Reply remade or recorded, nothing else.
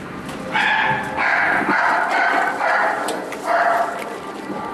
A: recorded